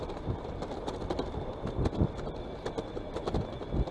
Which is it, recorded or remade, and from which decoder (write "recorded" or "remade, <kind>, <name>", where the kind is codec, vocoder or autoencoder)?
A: recorded